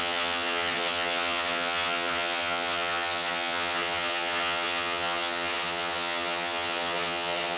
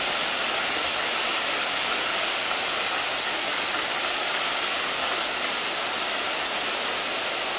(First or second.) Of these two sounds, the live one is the second